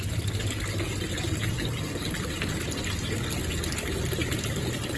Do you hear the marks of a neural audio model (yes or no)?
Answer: no